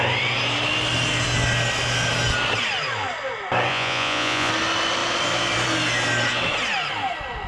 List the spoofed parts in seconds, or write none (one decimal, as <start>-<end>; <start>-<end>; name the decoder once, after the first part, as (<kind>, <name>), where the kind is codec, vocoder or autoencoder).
3.7-4.5 (vocoder, Vocos)